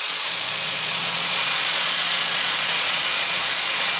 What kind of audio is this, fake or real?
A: fake